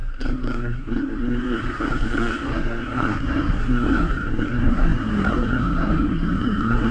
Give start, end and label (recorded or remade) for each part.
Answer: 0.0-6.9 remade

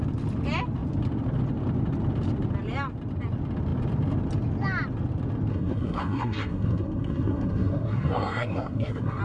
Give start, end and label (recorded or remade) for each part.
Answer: 0.0-5.5 recorded; 5.5-9.2 remade